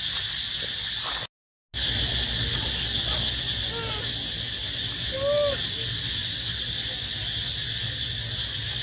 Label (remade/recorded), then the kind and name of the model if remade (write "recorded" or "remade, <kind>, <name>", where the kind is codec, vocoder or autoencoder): recorded